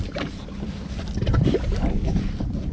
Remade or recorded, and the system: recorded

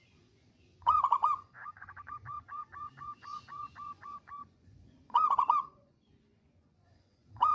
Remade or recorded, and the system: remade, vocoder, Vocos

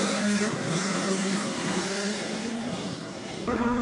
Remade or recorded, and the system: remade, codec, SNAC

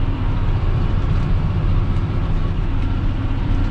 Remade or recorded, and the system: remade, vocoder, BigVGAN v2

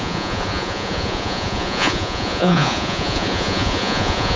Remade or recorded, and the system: remade, vocoder, Vocos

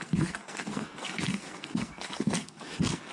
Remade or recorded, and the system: remade, codec, SNAC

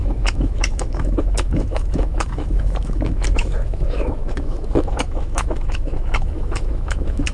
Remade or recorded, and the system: remade, autoencoder, DAC-VAE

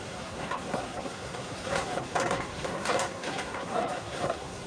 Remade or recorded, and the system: remade, codec, SNAC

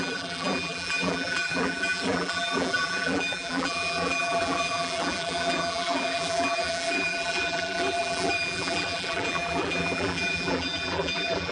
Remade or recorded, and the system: remade, vocoder, BigVGAN v2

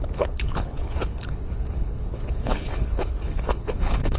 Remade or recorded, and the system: remade, codec, HILCodec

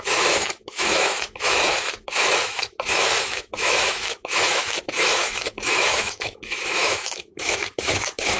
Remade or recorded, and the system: remade, autoencoder, DAC-VAE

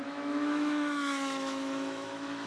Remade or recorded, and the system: remade, autoencoder, DAC-VAE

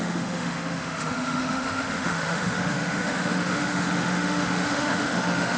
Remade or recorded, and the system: remade, autoencoder, DAC-VAE